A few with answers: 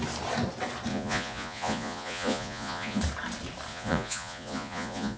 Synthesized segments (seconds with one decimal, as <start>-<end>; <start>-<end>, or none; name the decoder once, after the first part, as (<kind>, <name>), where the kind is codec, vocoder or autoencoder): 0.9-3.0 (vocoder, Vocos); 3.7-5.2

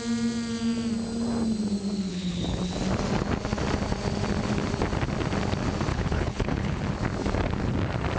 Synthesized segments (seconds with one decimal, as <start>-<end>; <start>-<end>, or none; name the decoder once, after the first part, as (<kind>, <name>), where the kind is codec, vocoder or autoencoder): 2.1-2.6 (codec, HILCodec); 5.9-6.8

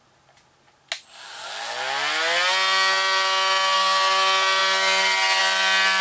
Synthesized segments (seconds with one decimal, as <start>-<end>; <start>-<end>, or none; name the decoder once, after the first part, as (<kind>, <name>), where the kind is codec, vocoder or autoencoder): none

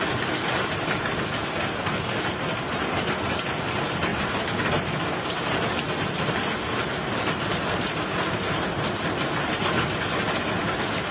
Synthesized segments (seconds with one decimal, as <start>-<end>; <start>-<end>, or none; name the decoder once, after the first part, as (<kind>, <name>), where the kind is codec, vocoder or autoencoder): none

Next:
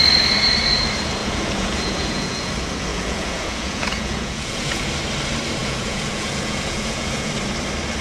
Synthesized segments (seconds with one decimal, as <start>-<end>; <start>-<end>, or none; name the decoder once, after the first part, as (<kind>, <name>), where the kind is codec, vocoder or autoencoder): 1.2-2.5 (vocoder, Vocos); 2.9-4.9; 5.6-7.3

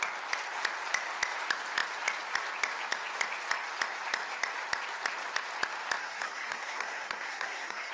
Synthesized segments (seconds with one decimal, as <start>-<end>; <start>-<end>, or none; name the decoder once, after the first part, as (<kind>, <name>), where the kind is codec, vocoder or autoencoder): 6.0-7.9 (codec, SNAC)

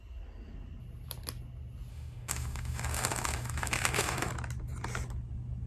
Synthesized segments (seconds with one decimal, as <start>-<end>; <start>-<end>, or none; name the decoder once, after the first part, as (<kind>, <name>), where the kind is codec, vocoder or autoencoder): 1.9-4.3 (autoencoder, DAC-VAE)